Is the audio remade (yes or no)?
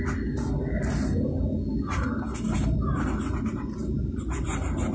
no